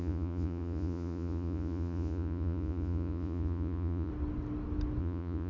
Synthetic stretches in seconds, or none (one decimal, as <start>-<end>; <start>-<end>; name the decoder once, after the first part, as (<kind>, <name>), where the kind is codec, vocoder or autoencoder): 0.0-4.1 (vocoder, Vocos); 5.0-5.5